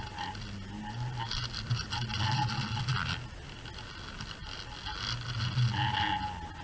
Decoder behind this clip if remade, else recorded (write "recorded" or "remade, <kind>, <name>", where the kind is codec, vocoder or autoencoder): recorded